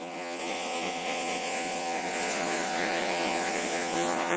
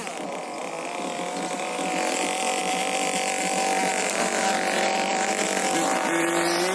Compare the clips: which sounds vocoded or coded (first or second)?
first